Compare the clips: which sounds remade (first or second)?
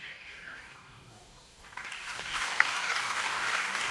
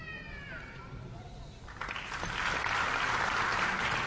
first